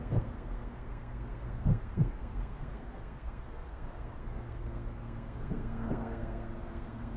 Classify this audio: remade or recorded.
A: remade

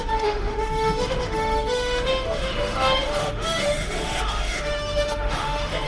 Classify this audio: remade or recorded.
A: remade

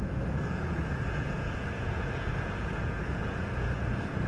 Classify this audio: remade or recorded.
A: remade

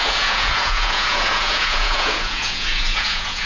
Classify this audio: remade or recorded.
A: remade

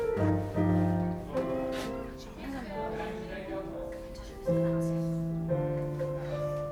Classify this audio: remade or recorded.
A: recorded